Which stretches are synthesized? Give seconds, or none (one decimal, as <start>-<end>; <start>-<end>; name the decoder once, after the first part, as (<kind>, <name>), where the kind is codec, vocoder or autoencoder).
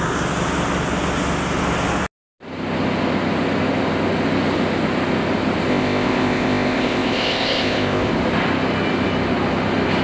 5.7-8.1 (codec, ZipCodec)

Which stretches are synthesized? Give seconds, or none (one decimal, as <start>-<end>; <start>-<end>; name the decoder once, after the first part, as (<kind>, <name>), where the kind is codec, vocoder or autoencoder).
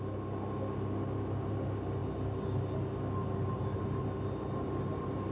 none